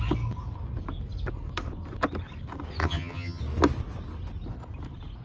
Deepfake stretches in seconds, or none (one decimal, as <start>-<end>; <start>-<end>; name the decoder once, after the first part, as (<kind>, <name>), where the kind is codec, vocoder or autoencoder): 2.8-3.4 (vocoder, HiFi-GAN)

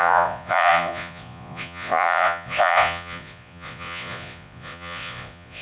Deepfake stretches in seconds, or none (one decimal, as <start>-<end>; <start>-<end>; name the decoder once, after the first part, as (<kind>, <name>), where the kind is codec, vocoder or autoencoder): 0.0-5.6 (vocoder, Vocos)

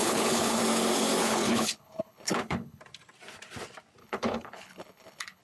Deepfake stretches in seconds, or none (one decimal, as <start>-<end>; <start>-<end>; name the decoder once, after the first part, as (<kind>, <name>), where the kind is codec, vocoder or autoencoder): 0.0-0.6 (codec, HILCodec); 1.2-2.8; 4.0-5.4